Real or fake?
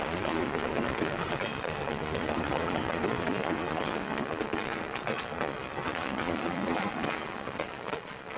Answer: fake